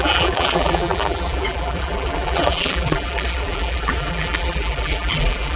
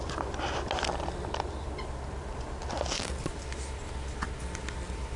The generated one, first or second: first